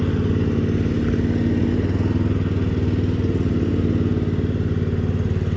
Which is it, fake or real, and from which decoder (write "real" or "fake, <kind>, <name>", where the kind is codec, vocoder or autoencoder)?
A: real